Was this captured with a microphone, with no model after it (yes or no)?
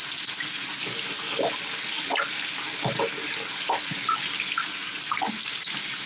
yes